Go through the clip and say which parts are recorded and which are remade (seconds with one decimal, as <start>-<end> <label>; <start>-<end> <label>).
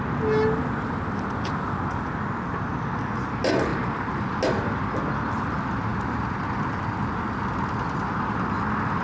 0.0-9.0 recorded